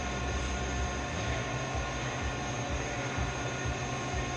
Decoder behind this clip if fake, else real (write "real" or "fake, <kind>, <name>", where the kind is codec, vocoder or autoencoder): real